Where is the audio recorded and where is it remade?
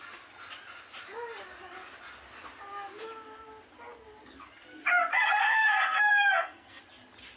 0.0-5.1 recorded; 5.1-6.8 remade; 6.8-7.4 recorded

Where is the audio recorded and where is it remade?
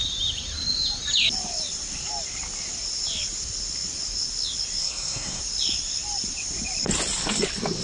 0.0-4.8 recorded; 4.8-5.4 remade; 5.4-7.8 recorded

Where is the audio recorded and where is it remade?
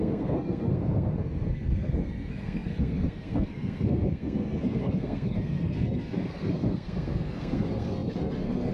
0.0-8.7 remade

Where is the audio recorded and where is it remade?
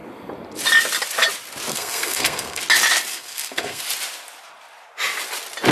0.0-1.7 recorded; 1.7-2.6 remade; 2.6-3.1 recorded; 3.1-3.8 remade; 3.8-5.7 recorded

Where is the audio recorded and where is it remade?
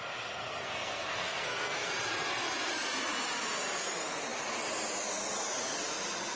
0.0-0.4 recorded; 0.4-1.9 remade; 1.9-6.3 recorded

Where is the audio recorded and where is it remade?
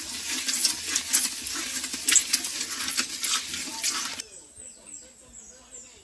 0.0-6.0 recorded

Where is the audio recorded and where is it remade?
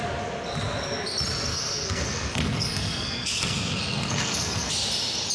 0.0-1.5 recorded; 1.5-4.7 remade; 4.7-5.3 recorded